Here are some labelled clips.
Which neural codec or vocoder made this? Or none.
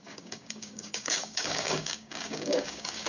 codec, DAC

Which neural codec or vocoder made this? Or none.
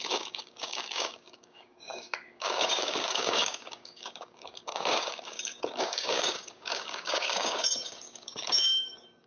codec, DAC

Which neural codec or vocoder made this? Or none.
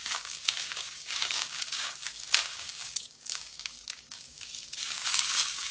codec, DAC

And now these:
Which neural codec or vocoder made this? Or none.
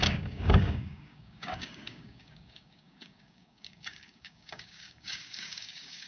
codec, DAC